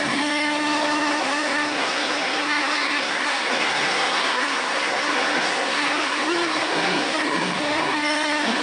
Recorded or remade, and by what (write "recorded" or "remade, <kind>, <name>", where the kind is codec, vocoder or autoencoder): remade, codec, SNAC